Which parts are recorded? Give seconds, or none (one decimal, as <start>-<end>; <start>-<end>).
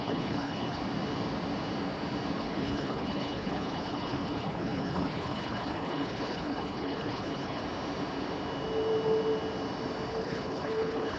0.8-2.4; 7.6-10.1